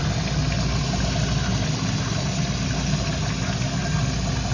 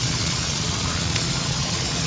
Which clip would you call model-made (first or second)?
second